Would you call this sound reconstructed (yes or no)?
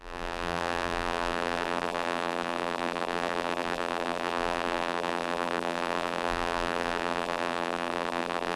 yes